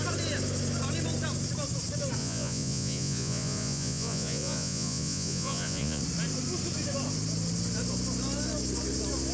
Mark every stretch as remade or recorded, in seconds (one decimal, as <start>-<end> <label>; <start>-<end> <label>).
0.0-2.2 recorded; 2.2-6.0 remade; 6.0-9.3 recorded